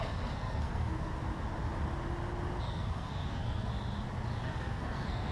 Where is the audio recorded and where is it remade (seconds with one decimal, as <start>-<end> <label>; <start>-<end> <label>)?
0.0-1.1 remade; 1.1-2.6 recorded; 2.6-3.7 remade; 3.7-4.4 recorded; 4.4-5.3 remade